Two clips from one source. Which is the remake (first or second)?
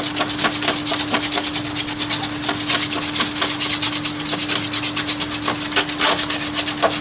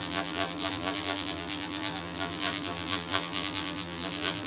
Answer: second